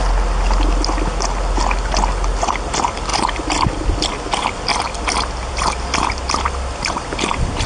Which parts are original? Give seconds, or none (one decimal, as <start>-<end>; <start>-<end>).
0.0-4.7; 6.2-7.7